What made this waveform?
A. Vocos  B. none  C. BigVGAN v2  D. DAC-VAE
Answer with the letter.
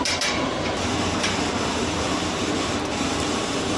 C